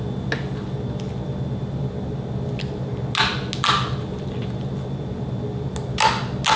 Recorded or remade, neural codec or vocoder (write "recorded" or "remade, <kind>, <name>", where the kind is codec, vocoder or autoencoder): recorded